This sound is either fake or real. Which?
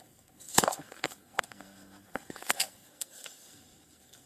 fake